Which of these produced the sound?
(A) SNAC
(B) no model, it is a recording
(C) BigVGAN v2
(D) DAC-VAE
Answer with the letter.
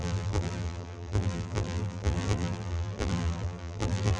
C